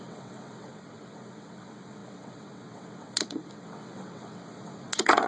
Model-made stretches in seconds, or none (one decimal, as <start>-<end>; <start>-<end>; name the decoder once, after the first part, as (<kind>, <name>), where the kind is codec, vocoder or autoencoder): 0.0-5.3 (vocoder, WaveNeXt)